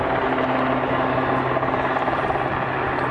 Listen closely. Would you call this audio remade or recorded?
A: recorded